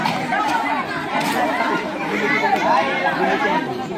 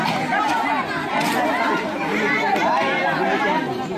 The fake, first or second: first